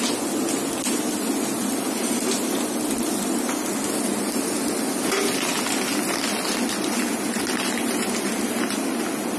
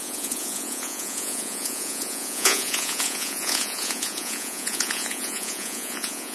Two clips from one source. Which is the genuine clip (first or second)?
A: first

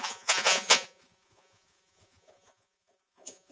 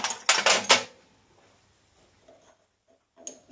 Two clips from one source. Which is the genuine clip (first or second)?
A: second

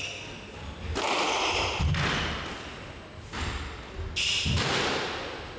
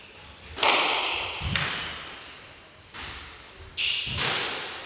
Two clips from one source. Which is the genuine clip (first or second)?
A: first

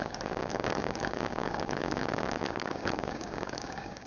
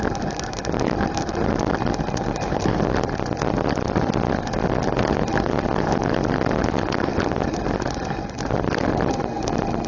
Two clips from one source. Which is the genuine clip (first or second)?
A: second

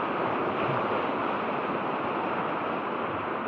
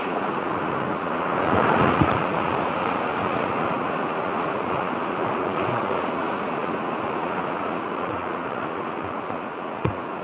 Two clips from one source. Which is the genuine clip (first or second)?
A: first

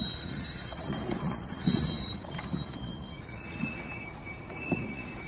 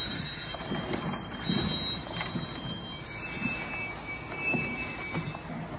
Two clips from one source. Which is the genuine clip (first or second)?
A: second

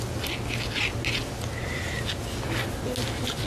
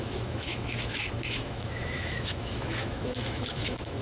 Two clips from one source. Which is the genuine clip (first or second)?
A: first